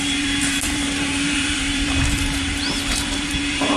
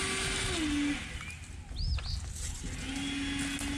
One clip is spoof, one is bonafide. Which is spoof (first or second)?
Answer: first